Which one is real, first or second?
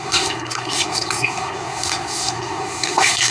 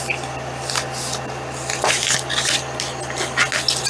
second